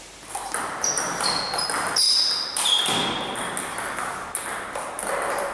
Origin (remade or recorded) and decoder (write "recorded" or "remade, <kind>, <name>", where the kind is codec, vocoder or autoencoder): recorded